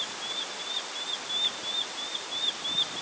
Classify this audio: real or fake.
real